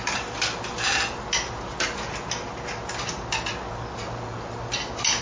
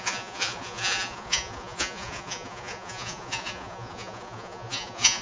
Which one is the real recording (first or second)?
first